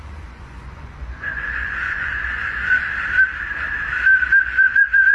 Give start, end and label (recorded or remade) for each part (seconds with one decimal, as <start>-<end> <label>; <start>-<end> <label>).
0.0-2.8 remade; 2.8-4.4 recorded; 4.4-5.1 remade